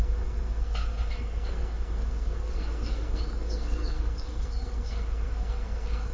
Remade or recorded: remade